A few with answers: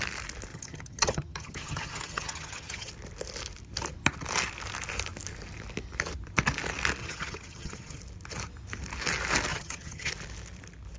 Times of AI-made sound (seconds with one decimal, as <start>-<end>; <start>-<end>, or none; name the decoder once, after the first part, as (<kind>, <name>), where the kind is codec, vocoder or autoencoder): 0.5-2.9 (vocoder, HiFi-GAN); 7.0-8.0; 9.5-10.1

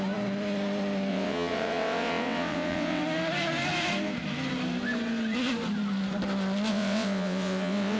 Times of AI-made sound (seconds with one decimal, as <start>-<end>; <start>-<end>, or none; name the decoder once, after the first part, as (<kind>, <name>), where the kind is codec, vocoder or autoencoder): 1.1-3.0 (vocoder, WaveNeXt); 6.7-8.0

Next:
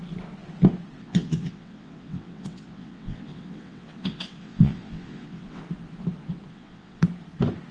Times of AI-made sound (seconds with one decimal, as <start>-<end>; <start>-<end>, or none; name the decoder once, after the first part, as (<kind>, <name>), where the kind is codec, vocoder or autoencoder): 1.0-5.6 (vocoder, WaveNeXt); 6.5-7.0

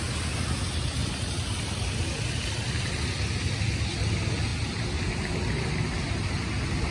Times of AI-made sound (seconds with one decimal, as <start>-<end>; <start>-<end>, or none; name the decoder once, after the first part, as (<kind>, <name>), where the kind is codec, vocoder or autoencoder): none

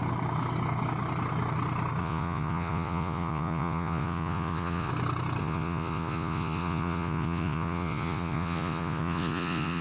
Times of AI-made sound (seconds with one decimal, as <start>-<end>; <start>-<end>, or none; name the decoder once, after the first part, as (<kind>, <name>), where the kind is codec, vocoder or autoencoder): 2.0-4.9 (vocoder, Vocos); 5.4-9.8

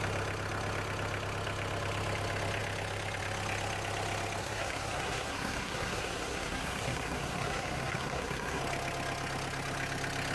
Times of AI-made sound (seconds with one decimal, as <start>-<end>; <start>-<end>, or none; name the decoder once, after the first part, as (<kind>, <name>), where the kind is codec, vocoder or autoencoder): 4.4-8.6 (codec, SNAC)